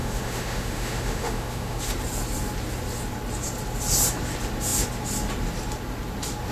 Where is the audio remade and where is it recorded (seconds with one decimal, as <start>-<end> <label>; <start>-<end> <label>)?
0.0-1.8 remade; 1.8-6.5 recorded